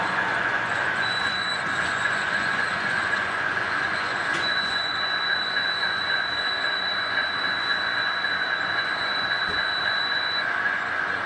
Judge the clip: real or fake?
fake